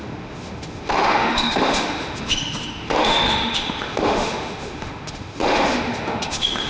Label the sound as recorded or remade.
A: remade